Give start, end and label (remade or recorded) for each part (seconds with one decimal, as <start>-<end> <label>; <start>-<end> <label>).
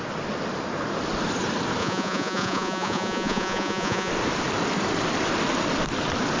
0.0-1.8 recorded; 1.8-4.1 remade; 4.1-6.4 recorded